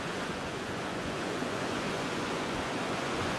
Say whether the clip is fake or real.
fake